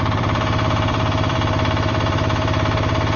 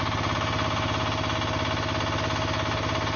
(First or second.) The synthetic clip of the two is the first